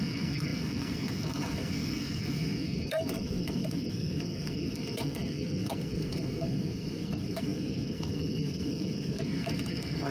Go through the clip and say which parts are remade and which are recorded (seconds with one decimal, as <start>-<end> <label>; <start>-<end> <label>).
0.0-10.1 remade